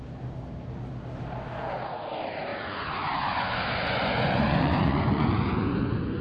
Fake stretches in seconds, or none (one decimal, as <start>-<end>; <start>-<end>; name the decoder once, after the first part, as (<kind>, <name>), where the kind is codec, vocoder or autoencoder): 2.5-6.2 (vocoder, Vocos)